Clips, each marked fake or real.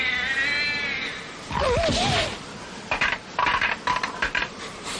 real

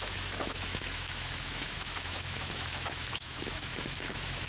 fake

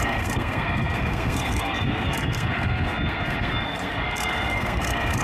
fake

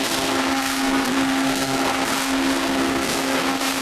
fake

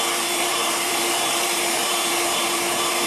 fake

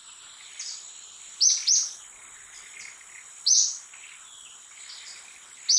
real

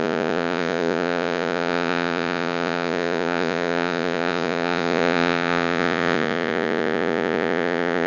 fake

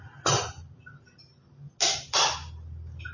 real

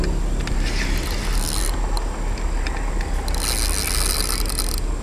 real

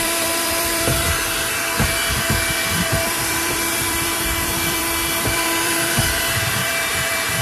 fake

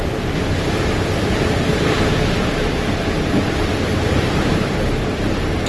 fake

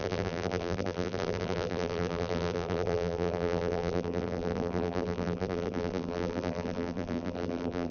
fake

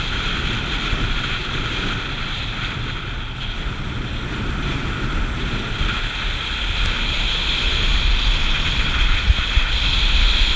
real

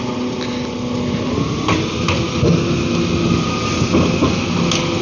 real